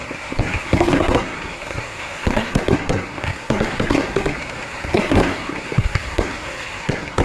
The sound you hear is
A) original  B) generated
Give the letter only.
B